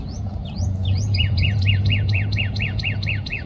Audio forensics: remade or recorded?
remade